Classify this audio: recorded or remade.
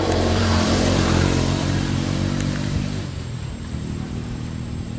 remade